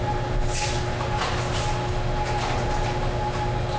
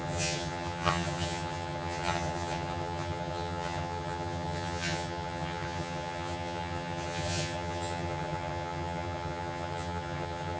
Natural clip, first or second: first